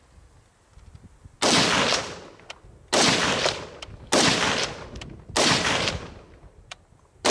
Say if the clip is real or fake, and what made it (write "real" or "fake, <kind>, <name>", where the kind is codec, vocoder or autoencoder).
real